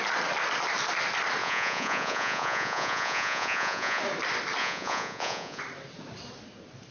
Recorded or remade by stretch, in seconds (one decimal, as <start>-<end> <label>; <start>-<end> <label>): 0.0-1.4 recorded; 1.4-4.0 remade; 4.0-4.6 recorded; 4.6-5.6 remade; 5.6-6.9 recorded